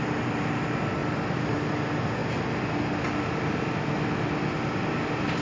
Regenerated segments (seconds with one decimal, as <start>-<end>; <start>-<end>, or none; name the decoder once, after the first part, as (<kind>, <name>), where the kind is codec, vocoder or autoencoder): none